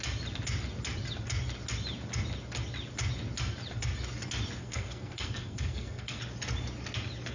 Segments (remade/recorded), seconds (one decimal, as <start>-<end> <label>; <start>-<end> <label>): 0.0-4.6 recorded; 4.6-6.2 remade; 6.2-7.3 recorded